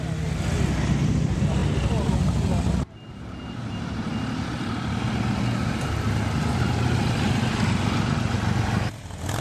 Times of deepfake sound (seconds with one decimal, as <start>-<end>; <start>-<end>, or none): none